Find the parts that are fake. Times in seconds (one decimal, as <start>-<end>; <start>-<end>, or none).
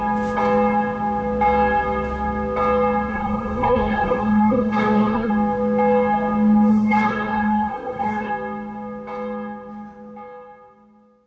3.1-5.3; 6.7-8.3